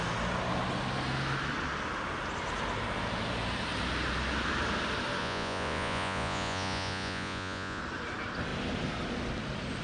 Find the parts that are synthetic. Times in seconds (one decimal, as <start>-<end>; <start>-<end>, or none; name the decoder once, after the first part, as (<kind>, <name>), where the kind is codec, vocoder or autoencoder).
5.2-7.8 (vocoder, Vocos)